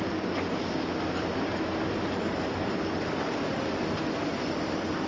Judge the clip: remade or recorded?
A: recorded